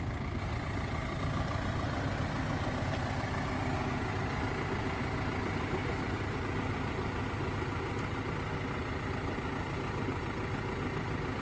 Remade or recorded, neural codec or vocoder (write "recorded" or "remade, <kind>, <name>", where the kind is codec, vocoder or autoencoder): recorded